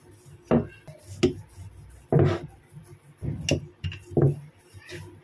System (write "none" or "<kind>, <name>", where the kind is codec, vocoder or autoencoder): none